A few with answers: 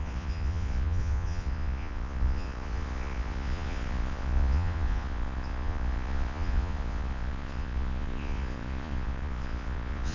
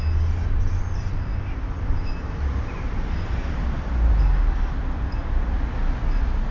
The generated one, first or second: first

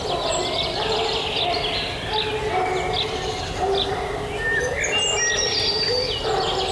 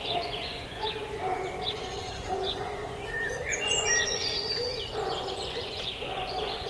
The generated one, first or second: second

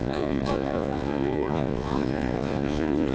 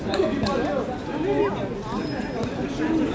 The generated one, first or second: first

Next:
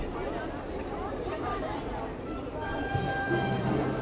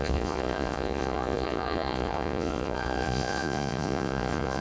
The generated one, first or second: second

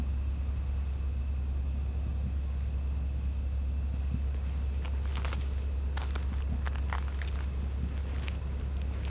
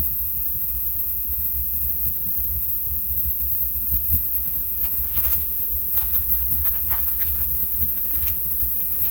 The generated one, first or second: second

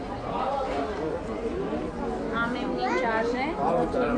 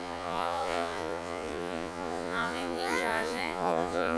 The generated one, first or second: second